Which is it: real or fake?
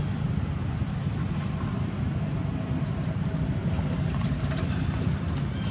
real